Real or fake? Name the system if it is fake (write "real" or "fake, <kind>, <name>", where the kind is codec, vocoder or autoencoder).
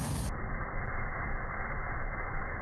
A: real